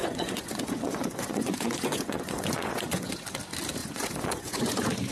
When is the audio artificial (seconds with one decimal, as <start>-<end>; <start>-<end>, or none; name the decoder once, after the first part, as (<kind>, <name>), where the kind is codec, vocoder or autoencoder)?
0.0-3.1 (vocoder, Vocos); 3.8-5.1